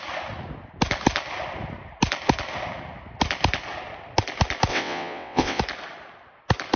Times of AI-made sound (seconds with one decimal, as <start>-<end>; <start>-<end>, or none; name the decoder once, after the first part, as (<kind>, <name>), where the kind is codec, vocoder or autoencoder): 4.7-5.6 (vocoder, WaveNeXt)